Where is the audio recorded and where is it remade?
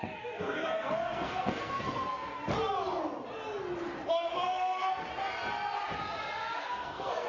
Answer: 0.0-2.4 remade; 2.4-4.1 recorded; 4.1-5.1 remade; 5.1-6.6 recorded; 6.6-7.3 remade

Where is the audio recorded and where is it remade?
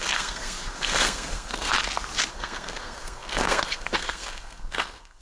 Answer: 0.0-1.7 remade; 1.7-2.3 recorded; 2.3-5.2 remade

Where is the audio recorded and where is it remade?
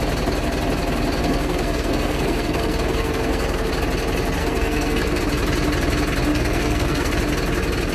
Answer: 0.0-1.2 recorded; 1.2-3.7 remade; 3.7-4.4 recorded; 4.4-5.2 remade; 5.2-6.3 recorded; 6.3-7.1 remade; 7.1-7.9 recorded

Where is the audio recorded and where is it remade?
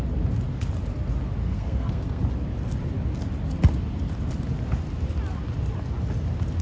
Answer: 0.0-1.4 recorded; 1.4-2.2 remade; 2.2-6.6 recorded